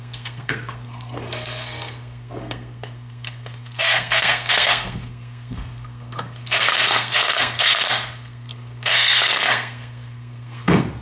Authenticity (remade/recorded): remade